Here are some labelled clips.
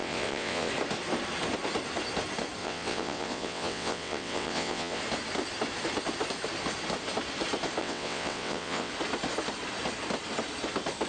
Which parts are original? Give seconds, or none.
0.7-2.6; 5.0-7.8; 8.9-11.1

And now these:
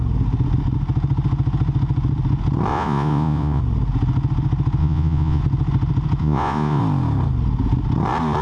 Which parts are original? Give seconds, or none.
0.0-2.7; 3.6-4.8; 5.4-6.2; 6.8-8.4

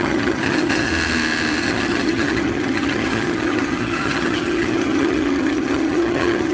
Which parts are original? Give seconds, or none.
0.9-1.6

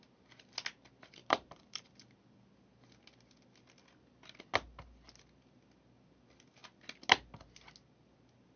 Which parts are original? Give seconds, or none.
0.0-1.2; 1.9-8.6

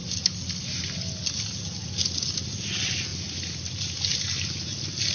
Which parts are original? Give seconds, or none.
0.0-5.1

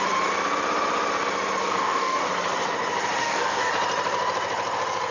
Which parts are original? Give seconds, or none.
0.0-1.6; 2.3-3.2; 3.7-5.1

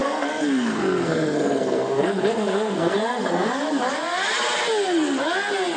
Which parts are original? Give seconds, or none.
3.5-5.8